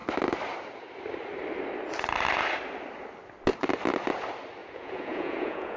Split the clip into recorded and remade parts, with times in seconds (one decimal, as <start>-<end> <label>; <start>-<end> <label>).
0.0-4.6 recorded; 4.6-5.8 remade